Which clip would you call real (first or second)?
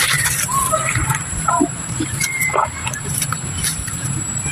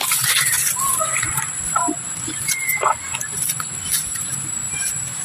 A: second